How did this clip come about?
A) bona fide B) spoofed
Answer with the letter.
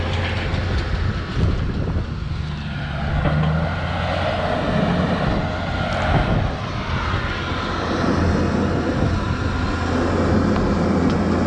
A